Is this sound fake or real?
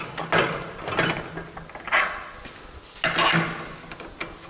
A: real